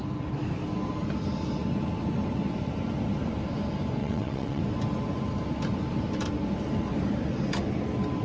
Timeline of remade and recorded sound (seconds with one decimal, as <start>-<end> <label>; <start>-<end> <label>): 0.0-4.0 recorded; 4.0-4.6 remade; 4.6-8.2 recorded